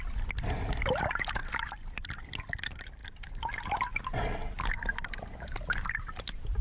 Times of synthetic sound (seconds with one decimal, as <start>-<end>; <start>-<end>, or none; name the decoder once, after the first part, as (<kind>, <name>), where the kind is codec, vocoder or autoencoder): none